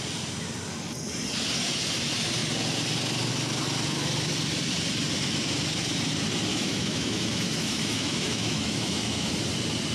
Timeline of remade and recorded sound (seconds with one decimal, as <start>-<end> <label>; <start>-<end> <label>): 0.0-6.5 recorded; 6.5-9.3 remade; 9.3-9.9 recorded

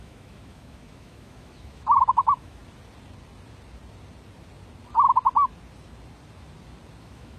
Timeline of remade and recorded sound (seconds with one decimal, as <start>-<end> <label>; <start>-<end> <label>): 0.0-2.6 remade; 2.6-7.0 recorded; 7.0-7.4 remade

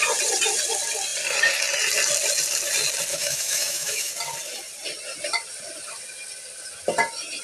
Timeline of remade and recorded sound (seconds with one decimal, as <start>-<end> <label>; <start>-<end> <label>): 0.0-3.1 recorded; 3.1-4.1 remade; 4.1-7.4 recorded